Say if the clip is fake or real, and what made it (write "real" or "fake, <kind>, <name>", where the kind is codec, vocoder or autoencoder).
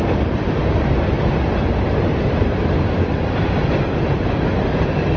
real